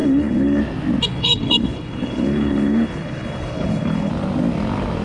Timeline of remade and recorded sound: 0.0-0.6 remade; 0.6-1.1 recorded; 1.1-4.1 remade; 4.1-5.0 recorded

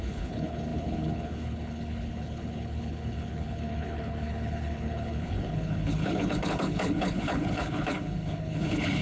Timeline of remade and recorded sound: 0.0-9.0 remade

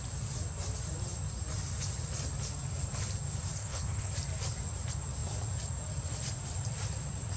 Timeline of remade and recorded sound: 0.0-3.6 recorded; 3.6-4.1 remade; 4.1-7.4 recorded

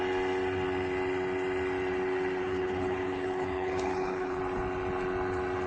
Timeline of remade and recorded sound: 0.0-2.4 recorded; 2.4-4.4 remade; 4.4-5.7 recorded

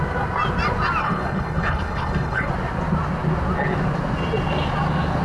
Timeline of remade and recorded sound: 0.0-1.0 recorded; 1.0-2.5 remade; 2.5-5.2 recorded

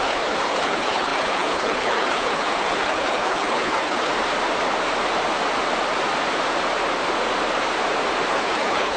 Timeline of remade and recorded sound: 0.0-4.1 remade; 4.1-8.3 recorded; 8.3-9.0 remade